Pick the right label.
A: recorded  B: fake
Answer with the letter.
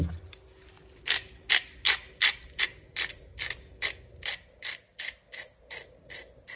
A